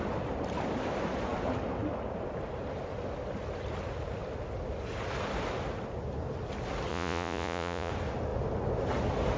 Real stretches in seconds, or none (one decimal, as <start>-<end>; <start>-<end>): 0.0-6.9; 7.9-9.4